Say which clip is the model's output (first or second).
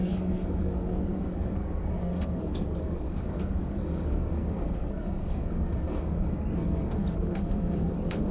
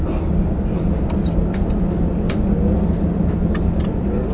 first